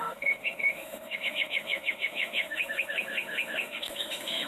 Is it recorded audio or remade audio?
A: remade